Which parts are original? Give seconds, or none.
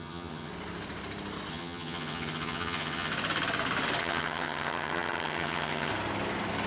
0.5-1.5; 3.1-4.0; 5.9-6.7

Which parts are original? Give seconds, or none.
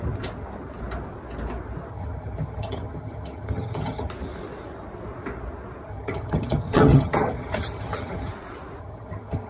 0.0-1.9; 4.1-5.9; 8.3-8.8